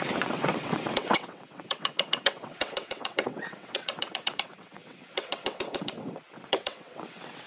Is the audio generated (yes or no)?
yes